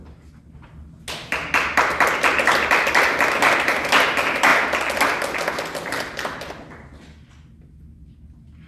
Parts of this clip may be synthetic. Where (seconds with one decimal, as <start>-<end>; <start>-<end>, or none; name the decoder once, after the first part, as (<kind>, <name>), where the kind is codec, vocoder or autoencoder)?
none